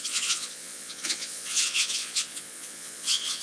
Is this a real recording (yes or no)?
no